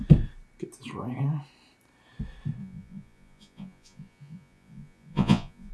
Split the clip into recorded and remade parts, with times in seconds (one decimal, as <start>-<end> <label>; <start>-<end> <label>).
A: 0.0-2.6 recorded; 2.6-5.7 remade